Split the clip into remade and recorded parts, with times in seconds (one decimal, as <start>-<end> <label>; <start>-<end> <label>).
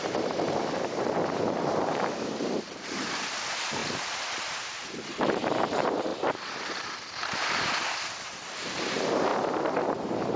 0.0-10.4 remade